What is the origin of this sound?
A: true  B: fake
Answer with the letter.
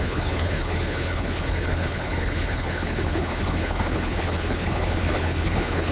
B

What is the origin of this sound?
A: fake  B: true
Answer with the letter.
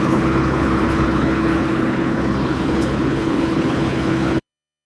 A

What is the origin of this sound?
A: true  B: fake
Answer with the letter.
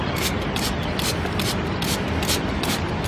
A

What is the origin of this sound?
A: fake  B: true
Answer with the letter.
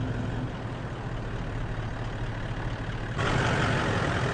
B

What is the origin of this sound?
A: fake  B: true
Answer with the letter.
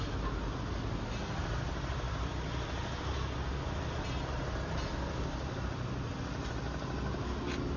B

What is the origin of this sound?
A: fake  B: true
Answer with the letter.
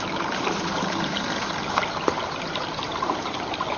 B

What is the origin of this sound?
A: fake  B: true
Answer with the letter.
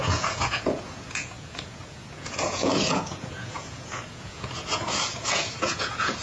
A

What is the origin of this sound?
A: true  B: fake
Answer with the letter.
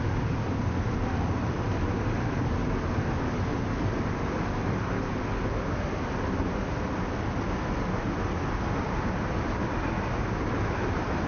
A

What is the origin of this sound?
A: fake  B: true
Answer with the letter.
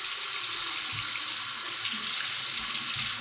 B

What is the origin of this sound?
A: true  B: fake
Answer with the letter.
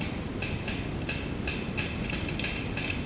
A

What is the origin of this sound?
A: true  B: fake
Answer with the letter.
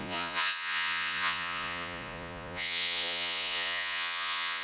B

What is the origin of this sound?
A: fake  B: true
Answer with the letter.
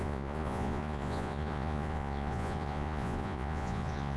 A